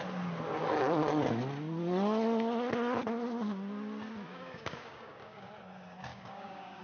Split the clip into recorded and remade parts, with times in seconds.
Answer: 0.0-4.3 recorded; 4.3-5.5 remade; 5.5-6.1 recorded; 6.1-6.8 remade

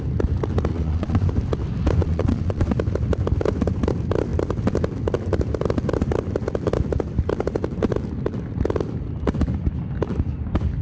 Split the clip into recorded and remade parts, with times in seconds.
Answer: 0.0-0.7 recorded; 0.7-1.3 remade; 1.3-2.0 recorded; 2.0-2.7 remade; 2.7-10.8 recorded